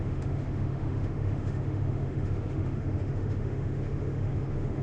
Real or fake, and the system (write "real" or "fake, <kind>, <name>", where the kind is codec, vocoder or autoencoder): fake, autoencoder, DAC-VAE